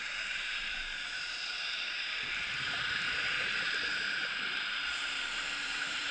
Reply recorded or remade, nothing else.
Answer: remade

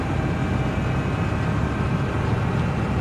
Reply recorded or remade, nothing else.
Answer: recorded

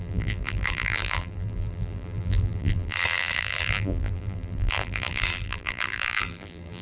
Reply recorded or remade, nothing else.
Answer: remade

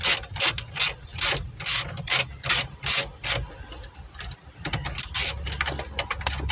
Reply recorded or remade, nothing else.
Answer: recorded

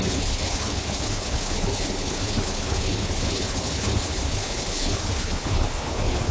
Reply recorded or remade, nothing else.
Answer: remade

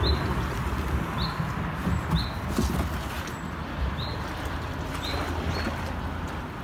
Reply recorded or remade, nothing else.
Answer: recorded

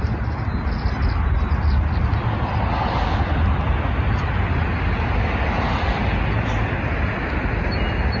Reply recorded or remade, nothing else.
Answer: recorded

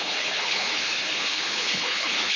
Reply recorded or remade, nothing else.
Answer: remade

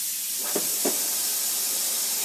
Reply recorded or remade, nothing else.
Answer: recorded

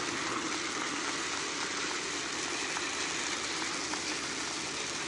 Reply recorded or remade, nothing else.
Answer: recorded